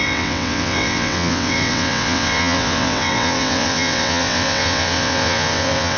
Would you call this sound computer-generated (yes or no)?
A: yes